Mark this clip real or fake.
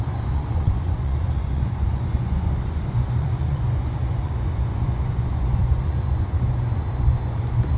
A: fake